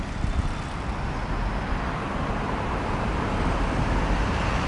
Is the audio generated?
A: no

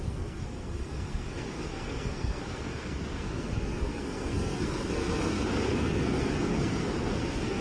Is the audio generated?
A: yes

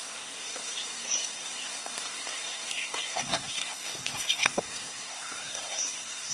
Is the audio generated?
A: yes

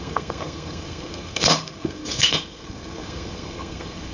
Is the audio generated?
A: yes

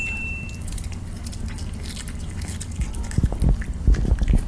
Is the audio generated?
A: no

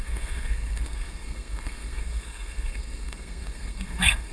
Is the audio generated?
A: yes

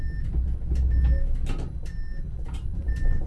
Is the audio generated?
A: no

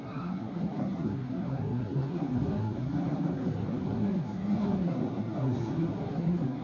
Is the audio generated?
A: yes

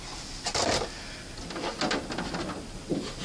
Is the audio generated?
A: no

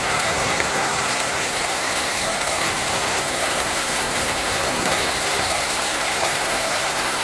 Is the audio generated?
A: yes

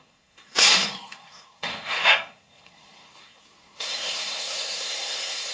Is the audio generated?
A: yes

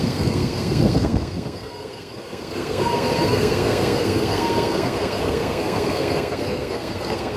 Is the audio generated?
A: yes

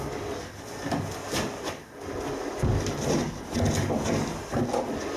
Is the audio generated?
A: no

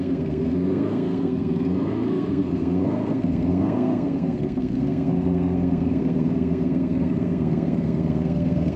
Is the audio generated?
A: yes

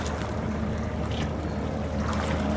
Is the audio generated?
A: no